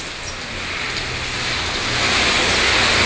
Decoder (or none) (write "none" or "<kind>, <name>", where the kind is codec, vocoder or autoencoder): none